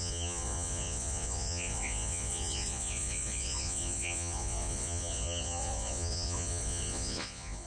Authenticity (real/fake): fake